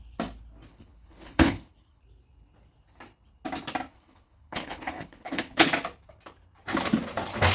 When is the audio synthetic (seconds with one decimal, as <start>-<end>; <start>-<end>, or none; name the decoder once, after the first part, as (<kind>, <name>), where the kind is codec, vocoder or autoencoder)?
0.7-2.0 (codec, HILCodec); 3.9-5.7